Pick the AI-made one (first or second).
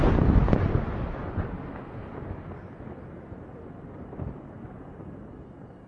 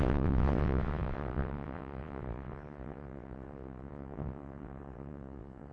second